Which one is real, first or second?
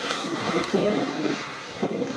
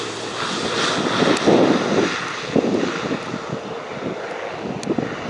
second